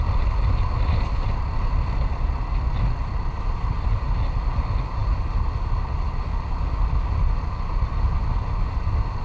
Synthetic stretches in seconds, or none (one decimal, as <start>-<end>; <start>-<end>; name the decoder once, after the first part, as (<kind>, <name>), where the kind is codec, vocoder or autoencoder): none